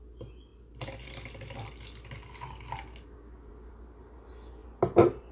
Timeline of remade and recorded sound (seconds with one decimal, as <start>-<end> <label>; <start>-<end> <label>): 0.0-5.3 recorded